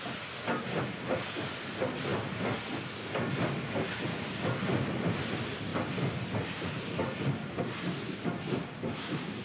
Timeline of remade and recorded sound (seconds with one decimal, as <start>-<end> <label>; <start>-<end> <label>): 0.0-9.4 recorded